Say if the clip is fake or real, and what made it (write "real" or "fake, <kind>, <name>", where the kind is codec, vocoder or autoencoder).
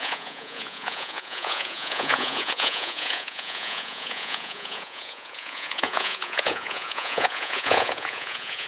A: fake, vocoder, Vocos